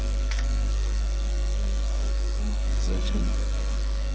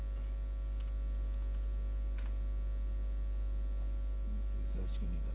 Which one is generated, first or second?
first